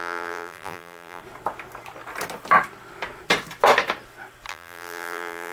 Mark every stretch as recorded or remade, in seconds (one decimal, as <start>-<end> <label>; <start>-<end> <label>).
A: 0.0-1.2 remade; 1.2-4.5 recorded; 4.5-5.5 remade